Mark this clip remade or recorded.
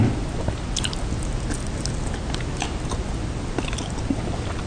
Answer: recorded